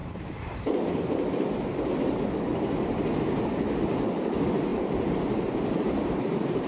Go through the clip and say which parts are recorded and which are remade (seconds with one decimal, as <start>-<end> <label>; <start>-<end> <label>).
0.0-3.4 remade; 3.4-4.7 recorded; 4.7-6.7 remade